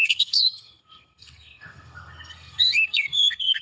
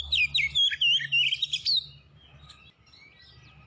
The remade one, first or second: first